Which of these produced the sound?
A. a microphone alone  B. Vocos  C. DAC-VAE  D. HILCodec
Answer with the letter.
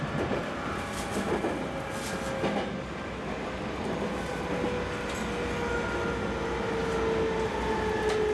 A